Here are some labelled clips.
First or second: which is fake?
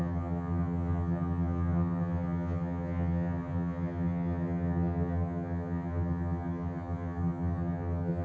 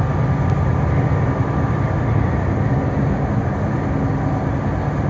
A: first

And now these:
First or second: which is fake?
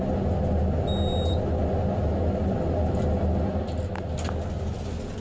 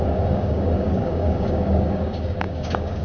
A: second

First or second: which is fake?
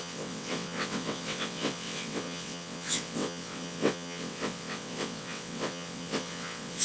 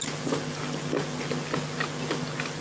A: first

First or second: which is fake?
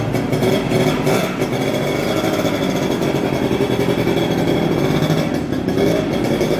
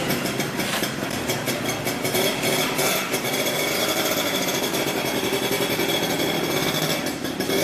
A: second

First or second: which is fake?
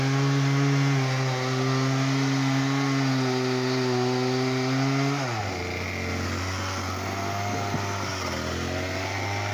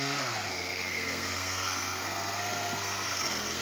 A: second